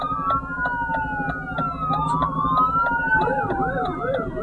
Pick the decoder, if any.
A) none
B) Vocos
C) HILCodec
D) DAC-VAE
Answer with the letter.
A